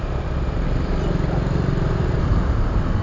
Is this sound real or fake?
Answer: real